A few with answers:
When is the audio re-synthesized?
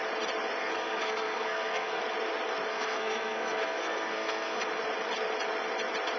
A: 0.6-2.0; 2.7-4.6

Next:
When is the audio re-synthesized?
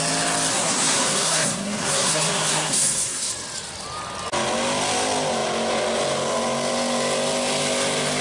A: 0.5-3.3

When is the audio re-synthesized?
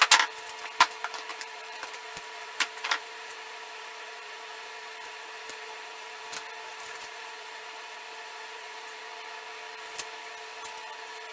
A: 1.3-6.2; 6.7-9.0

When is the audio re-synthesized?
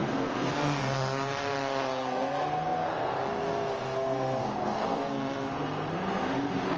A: 0.0-6.8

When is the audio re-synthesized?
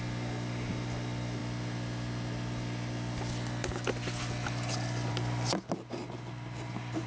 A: none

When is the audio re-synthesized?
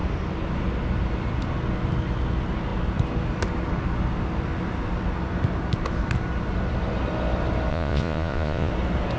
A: 7.7-8.7